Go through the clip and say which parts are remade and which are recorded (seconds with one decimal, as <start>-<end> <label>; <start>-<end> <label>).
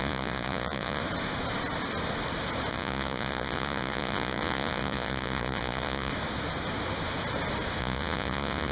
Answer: 0.0-1.0 remade; 1.0-2.7 recorded; 2.7-6.1 remade; 6.1-7.8 recorded; 7.8-8.7 remade